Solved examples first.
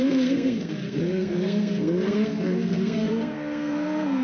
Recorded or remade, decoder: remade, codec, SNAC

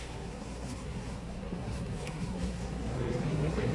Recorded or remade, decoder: remade, codec, SNAC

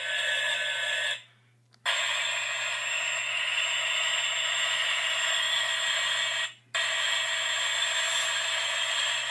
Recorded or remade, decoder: recorded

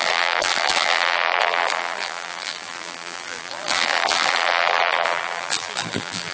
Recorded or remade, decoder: remade, vocoder, BigVGAN v2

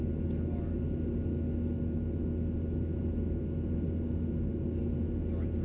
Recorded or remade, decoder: recorded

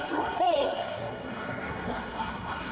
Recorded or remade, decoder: remade, codec, SNAC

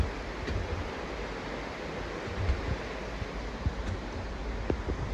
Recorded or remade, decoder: recorded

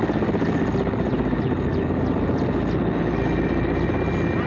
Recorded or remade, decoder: recorded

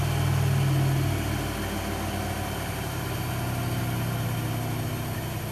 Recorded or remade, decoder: recorded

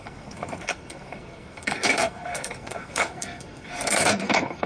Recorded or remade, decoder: remade, codec, SNAC